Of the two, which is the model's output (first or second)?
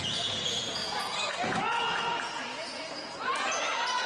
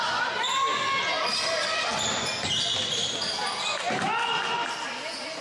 first